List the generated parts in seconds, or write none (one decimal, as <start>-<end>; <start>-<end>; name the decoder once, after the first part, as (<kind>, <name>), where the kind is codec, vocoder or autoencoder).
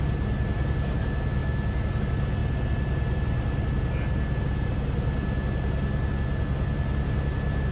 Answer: none